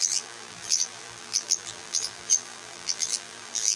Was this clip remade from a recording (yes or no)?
yes